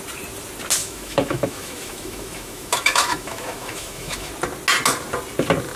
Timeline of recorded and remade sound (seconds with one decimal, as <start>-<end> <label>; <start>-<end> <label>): 0.0-0.8 recorded; 0.8-4.3 remade; 4.3-5.8 recorded